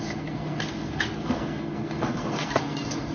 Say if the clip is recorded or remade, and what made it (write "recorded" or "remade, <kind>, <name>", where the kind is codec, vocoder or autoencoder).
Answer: remade, codec, SNAC